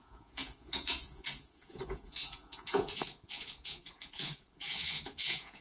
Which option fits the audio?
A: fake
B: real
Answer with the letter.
A